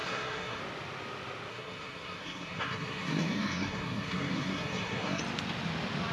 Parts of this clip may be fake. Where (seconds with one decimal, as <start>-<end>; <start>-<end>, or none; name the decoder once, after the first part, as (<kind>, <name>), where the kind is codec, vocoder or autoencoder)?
0.0-0.6 (codec, SNAC); 1.5-5.2

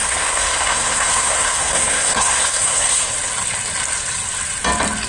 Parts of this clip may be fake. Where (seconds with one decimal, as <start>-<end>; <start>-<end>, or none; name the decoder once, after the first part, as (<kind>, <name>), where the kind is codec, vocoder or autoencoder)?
0.0-3.1 (codec, SNAC)

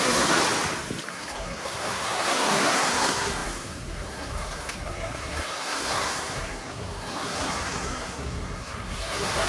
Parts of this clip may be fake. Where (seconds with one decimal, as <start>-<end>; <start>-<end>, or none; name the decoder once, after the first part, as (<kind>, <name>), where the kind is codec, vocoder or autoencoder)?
0.0-0.4 (codec, SNAC); 1.1-9.5

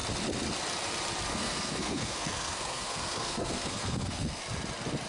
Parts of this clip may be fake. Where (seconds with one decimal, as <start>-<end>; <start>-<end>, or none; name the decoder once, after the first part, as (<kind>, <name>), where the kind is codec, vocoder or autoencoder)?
1.3-4.4 (codec, SNAC)

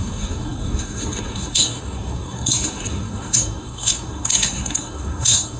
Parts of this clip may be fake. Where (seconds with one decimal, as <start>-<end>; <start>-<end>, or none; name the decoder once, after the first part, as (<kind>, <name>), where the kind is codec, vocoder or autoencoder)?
0.0-5.6 (codec, SNAC)